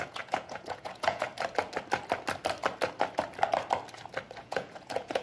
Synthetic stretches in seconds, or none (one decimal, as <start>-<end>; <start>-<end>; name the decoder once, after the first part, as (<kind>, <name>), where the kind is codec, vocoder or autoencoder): 0.0-1.3 (vocoder, Vocos); 4.4-5.2